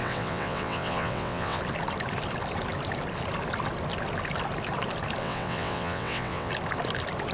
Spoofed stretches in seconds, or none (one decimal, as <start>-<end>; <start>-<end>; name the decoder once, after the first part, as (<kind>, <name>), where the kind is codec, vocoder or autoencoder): 0.0-1.6 (vocoder, WaveNeXt); 5.2-6.5